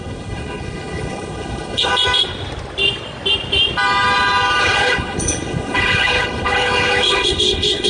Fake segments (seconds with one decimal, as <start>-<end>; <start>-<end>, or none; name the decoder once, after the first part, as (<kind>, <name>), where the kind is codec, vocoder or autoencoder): 0.0-1.9 (codec, HILCodec); 4.6-7.9